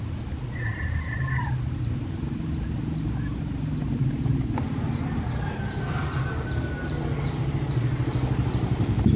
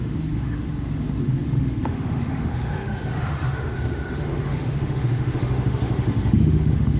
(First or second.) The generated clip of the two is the second